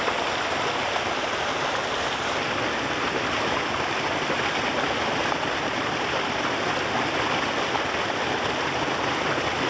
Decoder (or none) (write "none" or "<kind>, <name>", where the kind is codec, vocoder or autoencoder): none